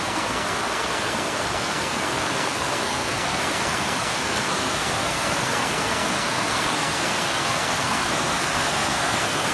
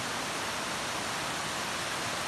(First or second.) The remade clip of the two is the first